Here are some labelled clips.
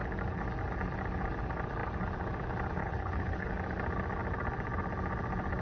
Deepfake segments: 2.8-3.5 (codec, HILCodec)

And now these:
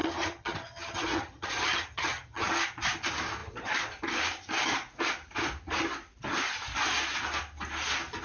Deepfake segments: 0.0-2.5 (vocoder, HiFi-GAN)